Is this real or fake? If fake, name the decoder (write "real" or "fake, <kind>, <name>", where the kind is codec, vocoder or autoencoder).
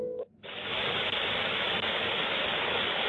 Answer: real